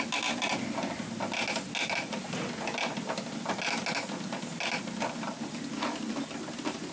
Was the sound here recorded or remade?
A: recorded